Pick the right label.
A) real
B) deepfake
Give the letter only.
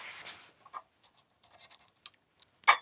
A